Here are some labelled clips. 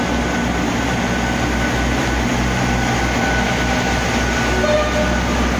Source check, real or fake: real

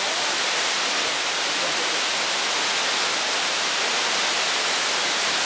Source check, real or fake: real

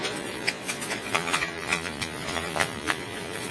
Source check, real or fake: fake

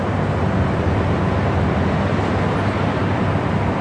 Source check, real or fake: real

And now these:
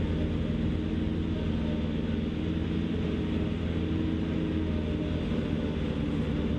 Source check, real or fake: real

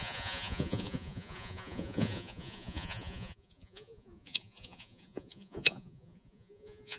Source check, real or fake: fake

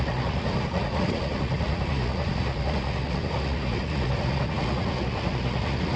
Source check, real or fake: fake